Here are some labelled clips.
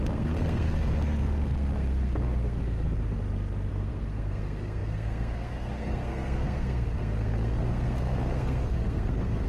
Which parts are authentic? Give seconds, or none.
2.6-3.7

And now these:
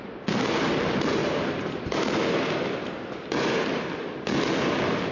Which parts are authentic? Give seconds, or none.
0.0-5.1

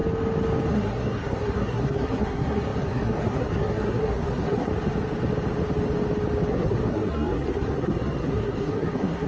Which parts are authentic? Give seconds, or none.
0.0-0.7; 4.7-6.5

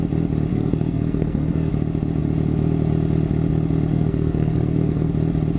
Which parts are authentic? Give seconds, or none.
0.0-0.5; 1.7-3.9; 5.1-5.6